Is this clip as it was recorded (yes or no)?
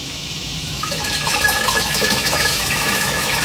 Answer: no